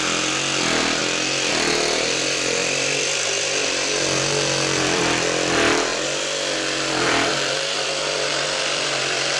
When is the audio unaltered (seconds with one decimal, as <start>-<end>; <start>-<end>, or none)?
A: 0.0-2.6; 5.0-5.9